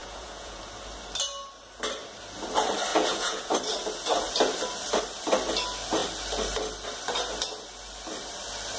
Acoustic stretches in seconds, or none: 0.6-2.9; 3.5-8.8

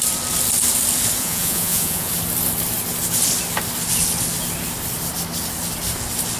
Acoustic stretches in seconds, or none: 0.0-1.2; 2.1-6.4